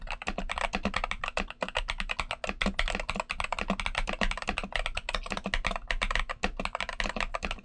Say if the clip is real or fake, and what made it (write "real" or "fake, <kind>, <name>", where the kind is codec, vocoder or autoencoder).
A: real